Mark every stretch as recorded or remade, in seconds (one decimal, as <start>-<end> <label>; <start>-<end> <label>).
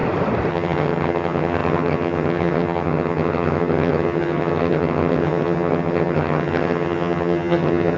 0.0-0.5 recorded; 0.5-8.0 remade